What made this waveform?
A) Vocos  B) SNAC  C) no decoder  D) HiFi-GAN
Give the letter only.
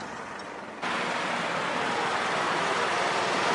C